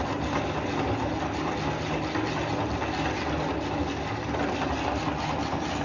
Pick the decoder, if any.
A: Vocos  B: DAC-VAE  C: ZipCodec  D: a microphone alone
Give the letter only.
D